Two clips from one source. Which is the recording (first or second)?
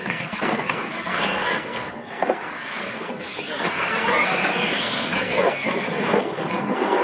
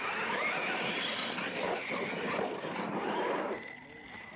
second